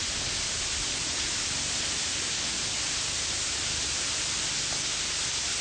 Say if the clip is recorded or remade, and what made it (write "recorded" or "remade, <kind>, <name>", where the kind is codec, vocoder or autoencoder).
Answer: recorded